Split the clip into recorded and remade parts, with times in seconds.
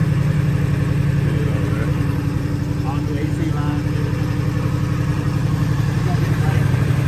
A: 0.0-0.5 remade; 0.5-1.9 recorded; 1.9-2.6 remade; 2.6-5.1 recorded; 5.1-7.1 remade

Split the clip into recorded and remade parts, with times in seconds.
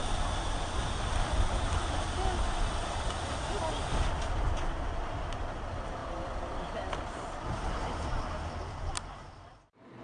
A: 0.0-6.0 recorded; 6.0-8.1 remade; 8.1-10.0 recorded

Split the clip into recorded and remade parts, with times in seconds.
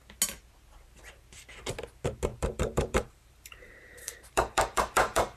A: 0.0-2.3 recorded; 2.3-5.4 remade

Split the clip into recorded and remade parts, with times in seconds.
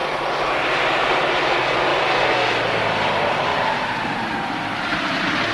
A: 0.0-1.4 remade; 1.4-5.5 recorded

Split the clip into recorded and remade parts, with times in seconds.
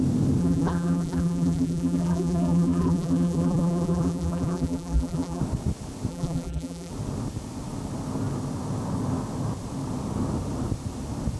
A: 0.0-0.4 recorded; 0.4-5.4 remade; 5.4-6.1 recorded; 6.1-6.9 remade; 6.9-11.4 recorded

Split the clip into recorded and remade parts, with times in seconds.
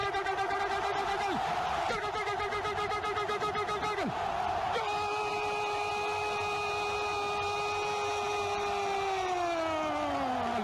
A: 0.0-0.6 remade; 0.6-5.3 recorded; 5.3-5.9 remade; 5.9-10.6 recorded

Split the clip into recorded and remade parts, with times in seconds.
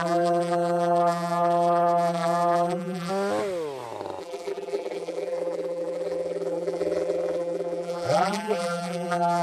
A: 0.0-3.1 remade; 3.1-4.2 recorded; 4.2-9.4 remade